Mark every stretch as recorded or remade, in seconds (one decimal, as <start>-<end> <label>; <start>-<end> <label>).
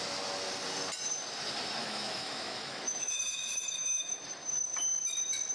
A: 0.0-1.8 recorded; 1.8-4.2 remade; 4.2-5.5 recorded